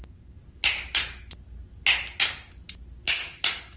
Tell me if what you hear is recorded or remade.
recorded